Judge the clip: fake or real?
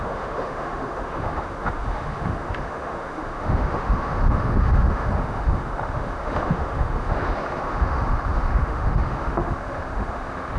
fake